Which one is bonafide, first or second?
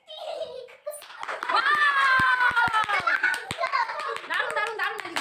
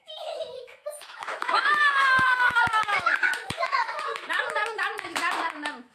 first